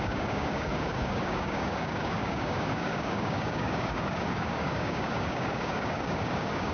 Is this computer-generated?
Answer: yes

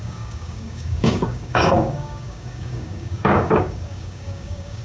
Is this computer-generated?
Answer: yes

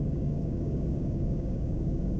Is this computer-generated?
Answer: yes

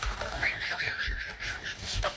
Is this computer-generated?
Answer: yes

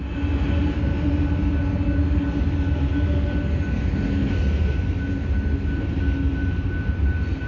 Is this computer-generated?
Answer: no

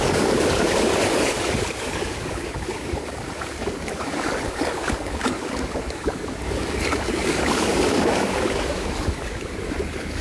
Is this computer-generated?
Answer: yes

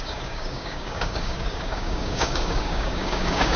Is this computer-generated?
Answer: yes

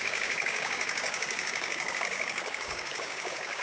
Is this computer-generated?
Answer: yes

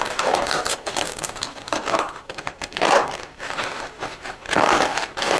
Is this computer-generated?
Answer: yes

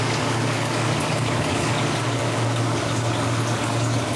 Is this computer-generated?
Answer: yes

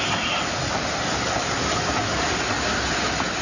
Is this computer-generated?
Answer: no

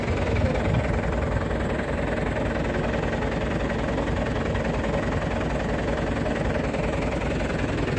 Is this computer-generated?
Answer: no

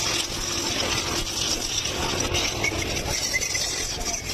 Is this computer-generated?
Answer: no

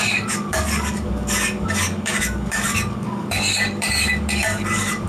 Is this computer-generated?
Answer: yes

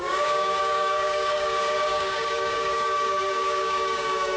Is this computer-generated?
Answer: yes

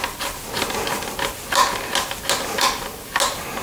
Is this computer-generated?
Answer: no